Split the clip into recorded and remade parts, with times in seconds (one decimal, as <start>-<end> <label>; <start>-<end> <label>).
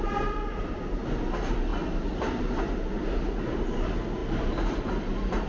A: 0.0-5.5 recorded